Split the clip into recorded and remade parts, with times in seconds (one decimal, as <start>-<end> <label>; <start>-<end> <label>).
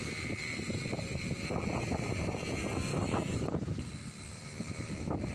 0.0-2.9 recorded; 2.9-3.7 remade; 3.7-5.3 recorded